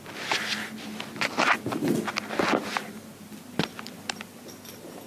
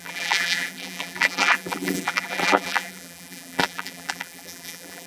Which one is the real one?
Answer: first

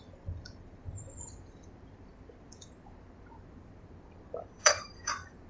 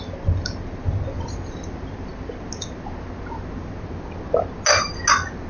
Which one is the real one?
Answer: second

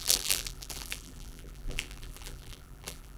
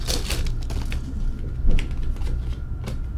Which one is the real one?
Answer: second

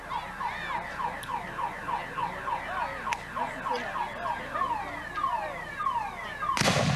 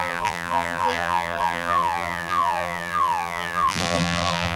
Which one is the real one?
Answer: first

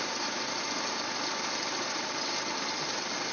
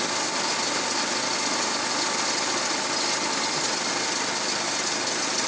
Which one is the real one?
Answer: second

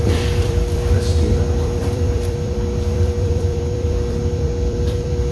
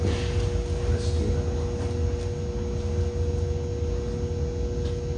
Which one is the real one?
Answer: second